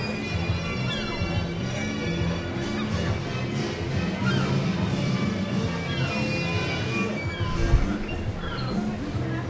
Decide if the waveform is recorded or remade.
recorded